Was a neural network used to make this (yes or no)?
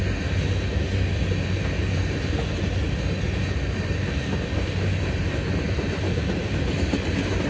no